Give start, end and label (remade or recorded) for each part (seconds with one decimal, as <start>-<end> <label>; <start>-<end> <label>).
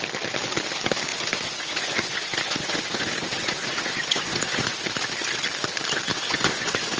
0.0-1.1 recorded; 1.1-4.8 remade; 4.8-6.1 recorded; 6.1-7.0 remade